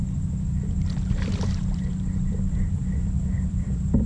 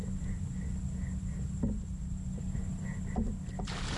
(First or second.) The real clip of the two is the second